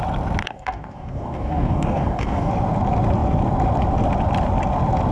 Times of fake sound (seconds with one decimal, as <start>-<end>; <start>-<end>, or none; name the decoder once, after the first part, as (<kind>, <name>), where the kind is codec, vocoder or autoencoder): 0.4-2.5 (codec, DAC)